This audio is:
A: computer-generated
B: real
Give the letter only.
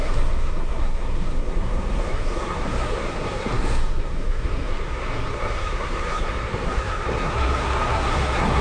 A